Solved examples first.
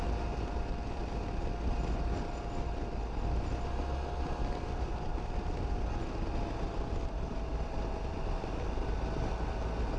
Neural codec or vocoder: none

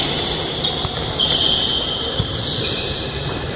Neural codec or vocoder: vocoder, BigVGAN v2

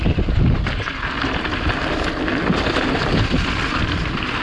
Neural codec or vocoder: none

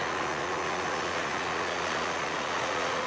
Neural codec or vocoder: vocoder, Vocos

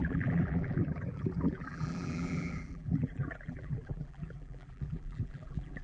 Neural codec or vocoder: vocoder, BigVGAN v2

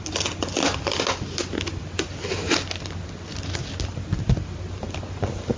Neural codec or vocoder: none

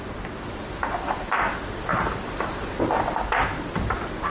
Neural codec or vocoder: none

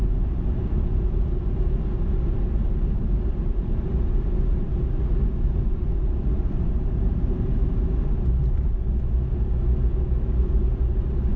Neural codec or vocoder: none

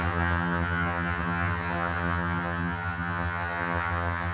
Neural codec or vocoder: vocoder, HiFi-GAN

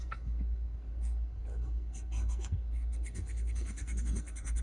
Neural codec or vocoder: codec, SNAC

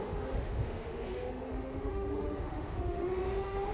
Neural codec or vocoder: autoencoder, DAC-VAE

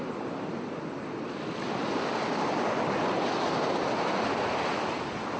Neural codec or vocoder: none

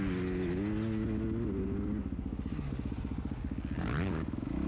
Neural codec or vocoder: none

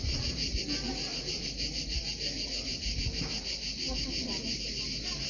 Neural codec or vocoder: none